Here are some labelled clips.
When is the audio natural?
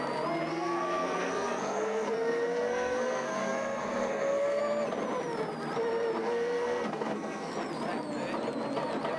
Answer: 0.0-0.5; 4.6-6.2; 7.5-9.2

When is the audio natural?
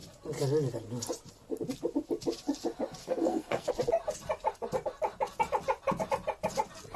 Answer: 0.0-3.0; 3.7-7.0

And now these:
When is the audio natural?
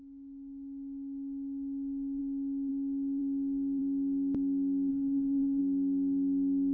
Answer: 0.0-4.9; 5.6-6.7